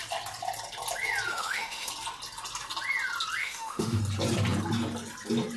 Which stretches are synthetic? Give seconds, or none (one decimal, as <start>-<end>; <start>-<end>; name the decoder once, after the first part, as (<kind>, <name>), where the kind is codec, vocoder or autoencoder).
1.3-1.9 (autoencoder, DAC-VAE); 3.4-4.0